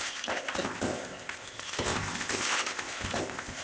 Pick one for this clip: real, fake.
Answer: fake